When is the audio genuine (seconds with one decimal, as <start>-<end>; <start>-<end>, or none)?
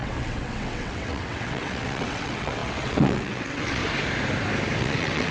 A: 3.8-4.8